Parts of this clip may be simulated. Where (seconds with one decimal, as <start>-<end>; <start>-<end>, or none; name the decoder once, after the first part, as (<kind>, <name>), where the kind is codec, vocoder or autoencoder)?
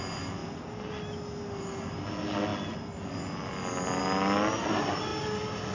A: none